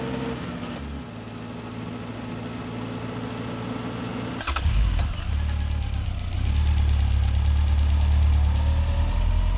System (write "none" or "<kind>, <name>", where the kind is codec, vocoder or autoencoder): none